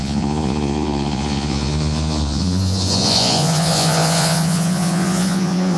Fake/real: fake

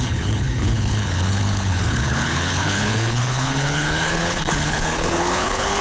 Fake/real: fake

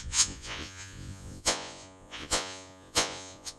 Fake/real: fake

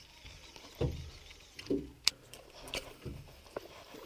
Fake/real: real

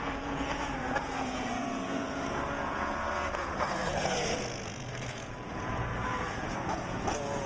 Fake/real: fake